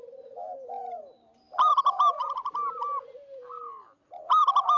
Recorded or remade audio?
recorded